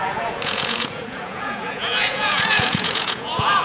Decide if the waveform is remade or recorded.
remade